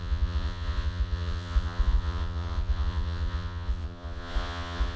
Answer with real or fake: fake